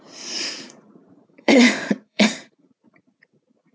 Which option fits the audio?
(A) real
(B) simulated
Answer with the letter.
B